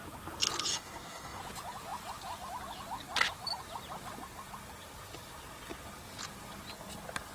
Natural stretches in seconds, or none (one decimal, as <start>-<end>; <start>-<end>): 0.0-0.7; 1.4-7.3